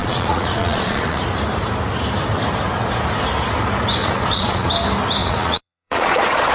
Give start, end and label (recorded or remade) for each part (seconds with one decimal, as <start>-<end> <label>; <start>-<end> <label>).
0.0-1.2 remade; 1.2-4.0 recorded; 4.0-4.7 remade; 4.7-5.2 recorded; 5.2-6.5 remade